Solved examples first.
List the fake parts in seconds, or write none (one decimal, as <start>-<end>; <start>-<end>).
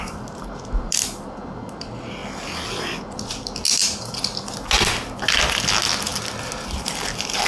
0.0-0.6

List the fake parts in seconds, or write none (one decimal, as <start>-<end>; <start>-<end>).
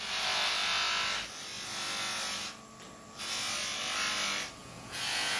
4.6-5.4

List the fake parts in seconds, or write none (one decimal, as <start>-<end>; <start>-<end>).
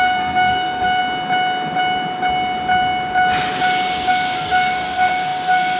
0.0-1.0; 4.1-5.8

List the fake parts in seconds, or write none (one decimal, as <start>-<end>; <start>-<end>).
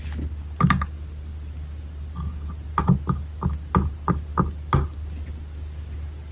none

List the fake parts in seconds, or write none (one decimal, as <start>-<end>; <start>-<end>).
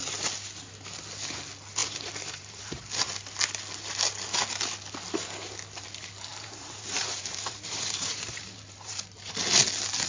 1.8-2.8; 6.3-9.3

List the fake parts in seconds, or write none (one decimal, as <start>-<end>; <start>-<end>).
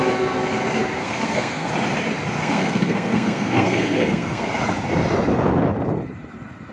1.0-1.7; 2.4-4.5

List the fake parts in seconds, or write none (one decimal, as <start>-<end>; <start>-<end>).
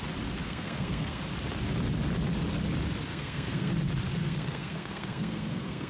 0.4-1.2; 3.1-3.7; 4.2-5.9